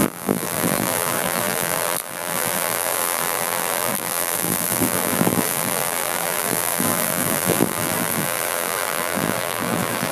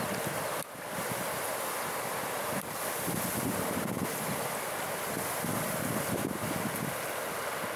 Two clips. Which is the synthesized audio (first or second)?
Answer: first